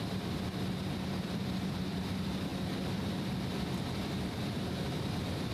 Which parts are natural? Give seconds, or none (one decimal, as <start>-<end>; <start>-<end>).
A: none